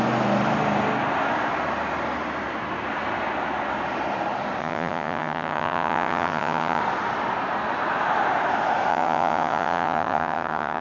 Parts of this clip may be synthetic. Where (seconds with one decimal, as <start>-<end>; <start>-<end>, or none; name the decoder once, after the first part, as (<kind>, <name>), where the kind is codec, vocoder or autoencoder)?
4.6-6.8 (vocoder, HiFi-GAN); 8.9-10.8